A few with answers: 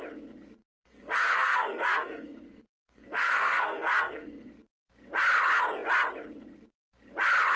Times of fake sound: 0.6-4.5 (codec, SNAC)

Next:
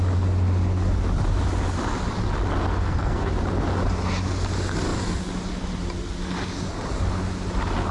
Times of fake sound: 2.7-3.3 (codec, SNAC)

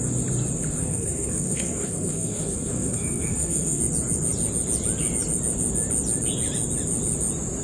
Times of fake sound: 0.8-3.8 (codec, SNAC)